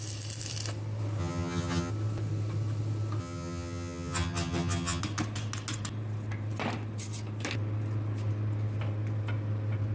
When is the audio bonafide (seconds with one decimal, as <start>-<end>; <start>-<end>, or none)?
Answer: 0.0-1.2; 1.9-3.2; 5.0-9.9